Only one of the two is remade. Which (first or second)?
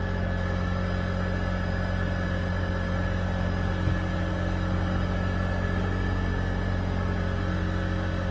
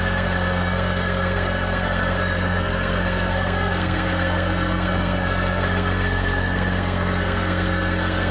second